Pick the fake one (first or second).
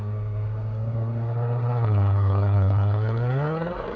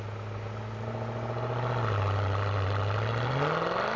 first